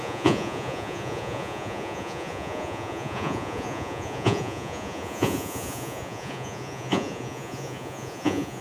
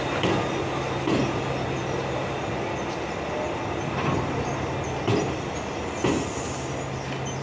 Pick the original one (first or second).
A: second